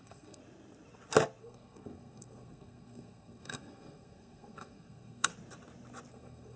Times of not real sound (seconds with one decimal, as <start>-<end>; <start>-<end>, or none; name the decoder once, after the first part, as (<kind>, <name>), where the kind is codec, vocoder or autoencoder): 0.0-0.4 (codec, SNAC); 1.4-5.3; 6.1-6.6